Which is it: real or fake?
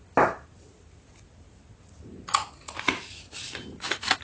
real